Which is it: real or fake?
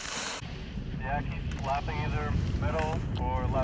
real